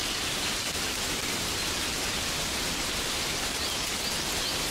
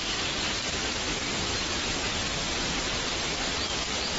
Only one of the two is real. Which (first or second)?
second